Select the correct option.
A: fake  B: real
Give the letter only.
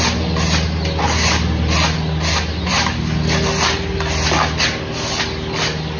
B